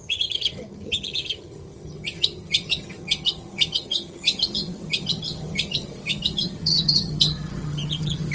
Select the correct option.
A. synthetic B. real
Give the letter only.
A